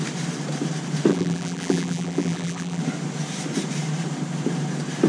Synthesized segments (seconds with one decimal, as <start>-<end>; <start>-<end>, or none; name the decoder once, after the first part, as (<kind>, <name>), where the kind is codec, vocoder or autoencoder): 1.1-2.8 (vocoder, BigVGAN v2)